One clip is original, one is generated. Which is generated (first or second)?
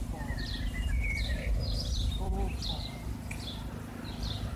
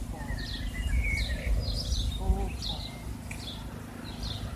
first